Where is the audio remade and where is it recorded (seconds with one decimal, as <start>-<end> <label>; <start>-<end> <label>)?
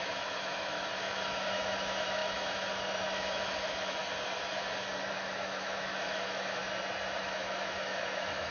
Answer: 0.0-4.0 remade; 4.0-5.1 recorded; 5.1-6.6 remade; 6.6-7.2 recorded; 7.2-8.5 remade